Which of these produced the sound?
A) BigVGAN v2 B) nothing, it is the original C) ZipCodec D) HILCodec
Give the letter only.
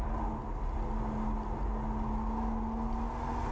B